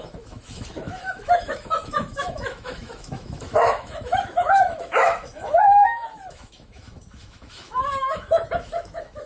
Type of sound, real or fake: fake